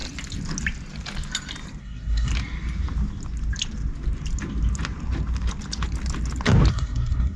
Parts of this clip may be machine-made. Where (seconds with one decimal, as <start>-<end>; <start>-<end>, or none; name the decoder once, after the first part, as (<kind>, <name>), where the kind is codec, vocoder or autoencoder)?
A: 1.8-2.3 (codec, SNAC); 6.7-7.4